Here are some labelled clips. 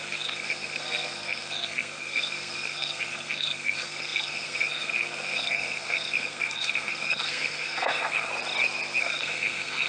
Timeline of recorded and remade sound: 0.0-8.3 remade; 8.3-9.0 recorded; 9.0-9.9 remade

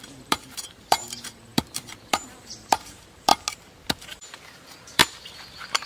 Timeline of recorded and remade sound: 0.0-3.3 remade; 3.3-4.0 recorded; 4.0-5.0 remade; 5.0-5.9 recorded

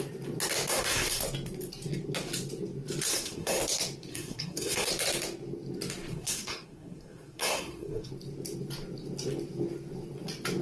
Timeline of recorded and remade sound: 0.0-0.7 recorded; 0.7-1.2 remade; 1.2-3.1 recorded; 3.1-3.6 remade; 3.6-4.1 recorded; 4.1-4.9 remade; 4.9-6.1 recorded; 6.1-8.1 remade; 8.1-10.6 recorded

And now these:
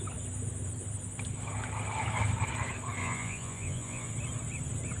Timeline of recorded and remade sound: 0.0-3.0 recorded; 3.0-4.1 remade; 4.1-5.0 recorded